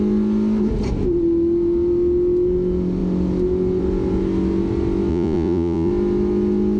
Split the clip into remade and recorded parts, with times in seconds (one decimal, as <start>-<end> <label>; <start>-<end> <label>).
0.0-5.1 recorded; 5.1-5.9 remade; 5.9-6.8 recorded